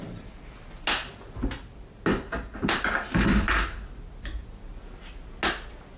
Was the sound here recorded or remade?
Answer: recorded